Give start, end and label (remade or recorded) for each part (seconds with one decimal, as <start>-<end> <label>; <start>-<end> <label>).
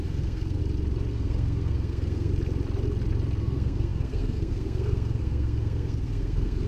0.0-0.6 remade; 0.6-1.1 recorded; 1.1-2.3 remade; 2.3-3.4 recorded; 3.4-6.7 remade